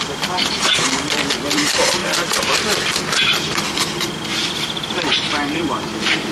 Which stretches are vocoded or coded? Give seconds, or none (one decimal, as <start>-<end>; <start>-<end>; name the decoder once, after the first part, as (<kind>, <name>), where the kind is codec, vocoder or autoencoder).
0.0-6.3 (vocoder, BigVGAN v2)